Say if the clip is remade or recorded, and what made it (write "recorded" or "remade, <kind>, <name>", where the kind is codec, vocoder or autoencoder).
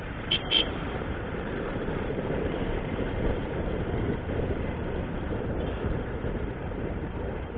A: remade, vocoder, BigVGAN v2